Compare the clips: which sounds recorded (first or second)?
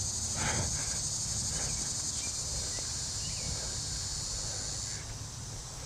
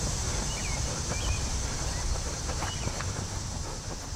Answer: first